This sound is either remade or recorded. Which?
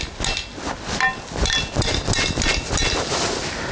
recorded